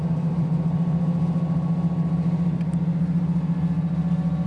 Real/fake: real